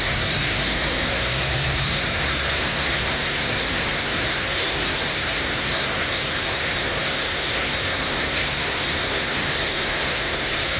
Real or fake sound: fake